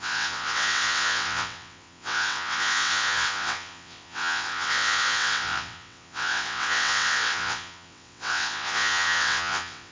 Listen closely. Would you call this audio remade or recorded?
remade